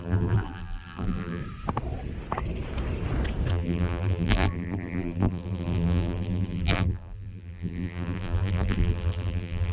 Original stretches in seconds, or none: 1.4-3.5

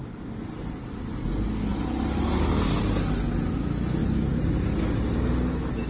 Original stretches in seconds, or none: 0.0-5.9

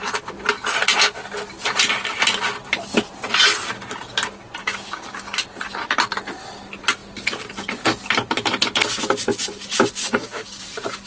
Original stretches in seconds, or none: 0.0-4.6; 5.4-10.0; 10.6-11.1

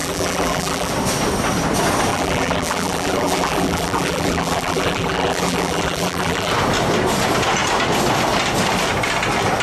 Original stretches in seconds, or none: 0.9-2.1; 6.5-9.6

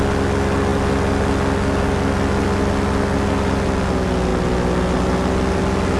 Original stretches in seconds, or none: 0.0-6.0

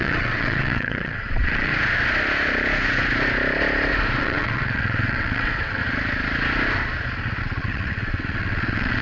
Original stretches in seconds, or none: 1.7-4.2; 5.8-7.4